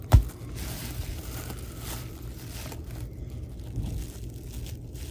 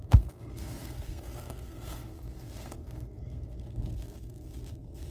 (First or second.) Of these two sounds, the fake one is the second